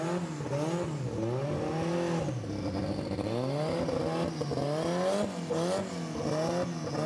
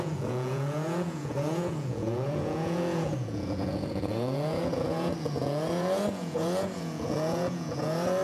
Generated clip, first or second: second